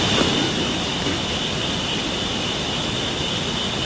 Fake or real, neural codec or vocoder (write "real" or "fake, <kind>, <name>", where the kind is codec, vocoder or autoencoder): real